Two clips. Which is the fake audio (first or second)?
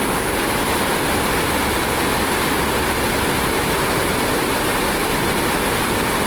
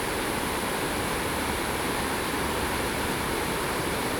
second